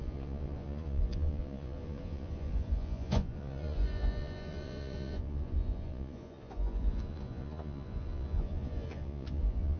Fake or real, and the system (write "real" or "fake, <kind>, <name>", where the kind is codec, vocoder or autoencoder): fake, vocoder, Vocos